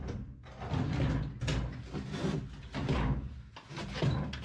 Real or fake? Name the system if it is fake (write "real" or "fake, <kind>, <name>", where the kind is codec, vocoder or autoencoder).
real